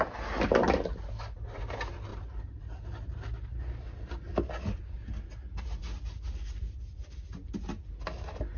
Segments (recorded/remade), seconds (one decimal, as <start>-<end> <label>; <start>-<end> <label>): 0.0-8.6 recorded